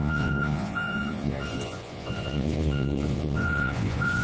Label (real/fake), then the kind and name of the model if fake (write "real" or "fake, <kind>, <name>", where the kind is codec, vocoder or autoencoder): fake, vocoder, Vocos